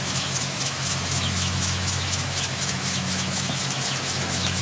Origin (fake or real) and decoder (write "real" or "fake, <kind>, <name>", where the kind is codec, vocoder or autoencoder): fake, autoencoder, DAC-VAE